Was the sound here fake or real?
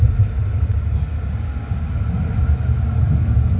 real